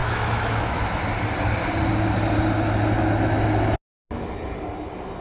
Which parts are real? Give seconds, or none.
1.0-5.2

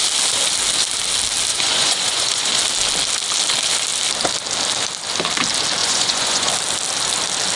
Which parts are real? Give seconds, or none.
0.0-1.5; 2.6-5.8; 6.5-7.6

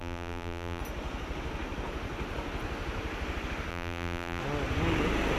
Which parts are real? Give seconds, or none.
0.8-3.7; 4.4-5.4

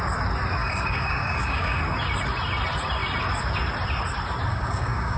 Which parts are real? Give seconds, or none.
0.0-0.6; 1.8-4.5

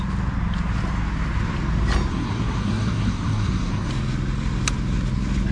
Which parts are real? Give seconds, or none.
0.0-2.1; 3.9-5.5

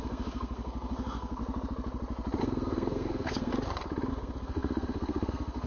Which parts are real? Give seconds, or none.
1.4-2.4; 3.5-4.1

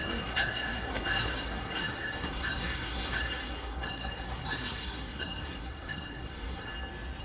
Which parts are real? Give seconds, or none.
6.7-7.2